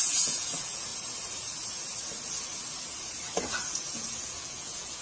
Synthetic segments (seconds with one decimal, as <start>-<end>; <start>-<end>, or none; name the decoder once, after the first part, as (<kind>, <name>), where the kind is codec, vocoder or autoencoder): 0.0-0.9 (vocoder, Vocos); 3.5-5.0